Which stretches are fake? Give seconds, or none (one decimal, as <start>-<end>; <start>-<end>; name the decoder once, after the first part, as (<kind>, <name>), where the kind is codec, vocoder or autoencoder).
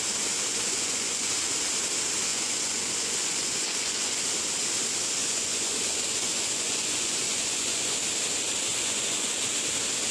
0.5-1.3 (vocoder, Vocos); 2.3-4.2; 5.2-8.0; 8.7-9.4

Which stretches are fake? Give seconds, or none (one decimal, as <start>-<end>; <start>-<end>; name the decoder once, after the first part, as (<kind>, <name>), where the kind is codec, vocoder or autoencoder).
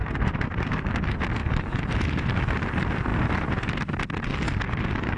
0.0-0.9 (vocoder, BigVGAN v2); 1.4-2.4